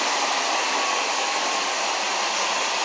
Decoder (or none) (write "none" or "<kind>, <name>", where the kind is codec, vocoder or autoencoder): none